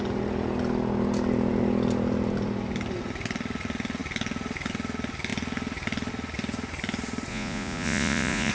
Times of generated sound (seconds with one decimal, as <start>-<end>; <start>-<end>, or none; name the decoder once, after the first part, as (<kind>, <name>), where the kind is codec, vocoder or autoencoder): 7.3-8.5 (vocoder, Vocos)